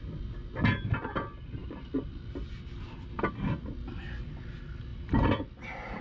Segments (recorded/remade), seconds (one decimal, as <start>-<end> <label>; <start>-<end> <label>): 0.0-1.6 recorded; 1.6-3.2 remade; 3.2-4.9 recorded; 4.9-6.0 remade